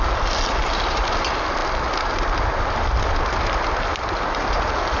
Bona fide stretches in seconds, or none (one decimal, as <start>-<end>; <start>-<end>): 0.0-5.0